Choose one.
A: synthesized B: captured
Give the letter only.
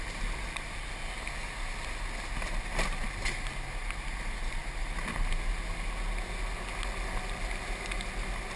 B